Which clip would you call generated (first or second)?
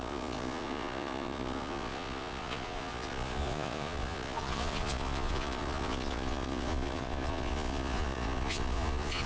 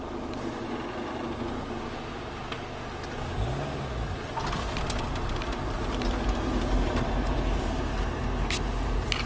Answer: first